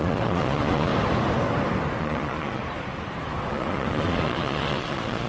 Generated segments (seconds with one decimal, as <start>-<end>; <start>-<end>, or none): 0.0-0.9; 2.0-2.6; 3.5-5.3

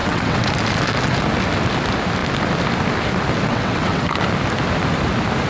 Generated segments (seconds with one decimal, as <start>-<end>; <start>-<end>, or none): 0.0-0.5; 3.5-4.1